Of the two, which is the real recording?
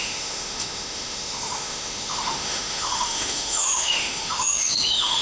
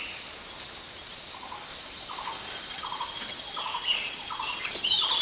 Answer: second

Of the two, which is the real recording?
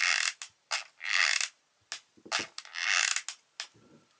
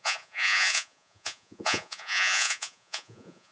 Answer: first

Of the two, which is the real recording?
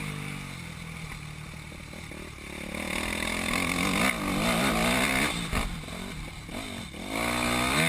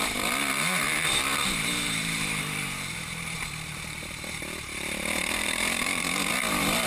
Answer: first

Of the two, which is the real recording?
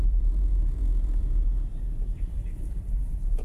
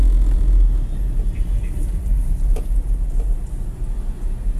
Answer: second